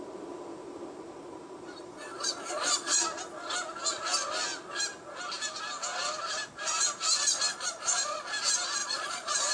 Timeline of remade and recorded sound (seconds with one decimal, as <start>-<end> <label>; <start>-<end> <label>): 0.0-1.8 recorded; 1.8-3.0 remade; 3.0-7.5 recorded; 7.5-8.3 remade; 8.3-8.8 recorded; 8.8-9.5 remade